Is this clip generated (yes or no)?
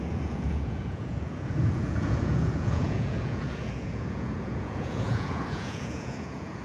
yes